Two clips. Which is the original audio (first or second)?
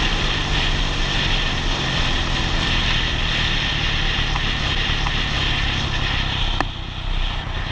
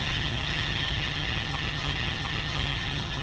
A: first